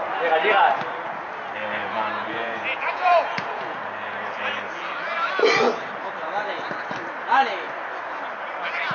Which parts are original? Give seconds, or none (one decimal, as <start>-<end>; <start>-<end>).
0.0-1.8; 3.8-8.9